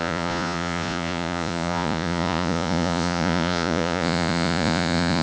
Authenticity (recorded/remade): remade